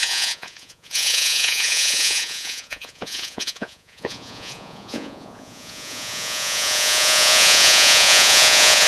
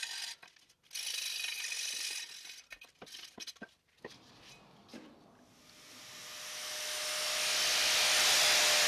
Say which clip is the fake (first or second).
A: first